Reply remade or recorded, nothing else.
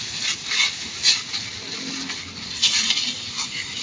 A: recorded